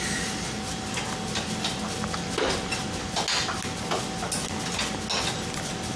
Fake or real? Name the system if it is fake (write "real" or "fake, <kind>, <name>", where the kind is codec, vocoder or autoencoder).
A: real